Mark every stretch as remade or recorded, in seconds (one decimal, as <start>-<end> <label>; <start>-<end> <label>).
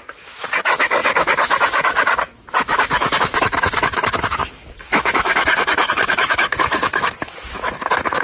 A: 0.0-8.2 remade